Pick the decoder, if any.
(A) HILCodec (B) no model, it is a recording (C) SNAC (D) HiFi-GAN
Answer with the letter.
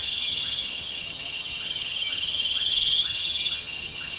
D